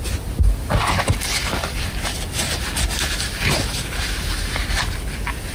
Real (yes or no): yes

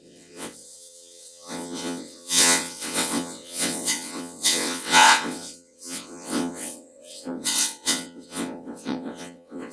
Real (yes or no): no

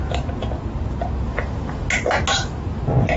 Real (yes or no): yes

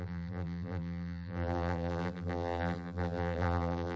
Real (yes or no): no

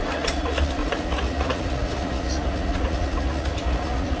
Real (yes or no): no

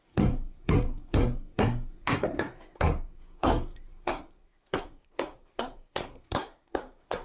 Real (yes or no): no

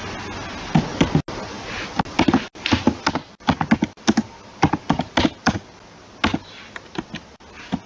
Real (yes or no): yes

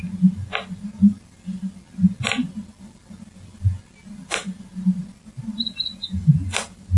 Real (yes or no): yes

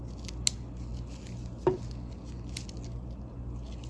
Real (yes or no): yes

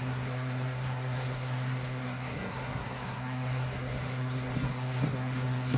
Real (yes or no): no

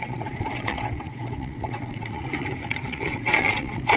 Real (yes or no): no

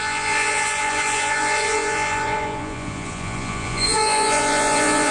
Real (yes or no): no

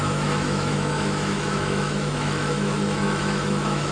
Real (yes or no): no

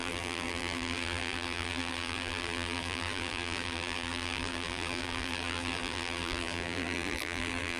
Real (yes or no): no